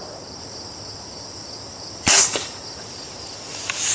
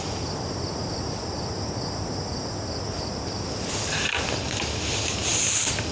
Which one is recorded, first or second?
second